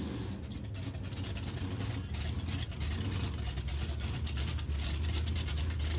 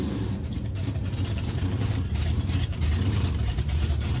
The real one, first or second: first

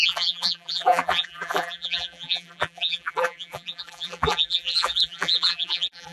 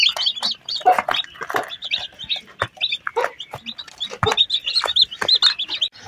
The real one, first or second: second